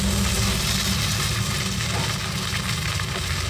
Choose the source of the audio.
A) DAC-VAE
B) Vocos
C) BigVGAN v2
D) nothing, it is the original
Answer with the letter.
D